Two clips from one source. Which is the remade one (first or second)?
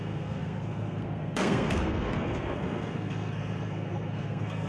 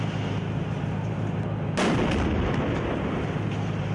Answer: first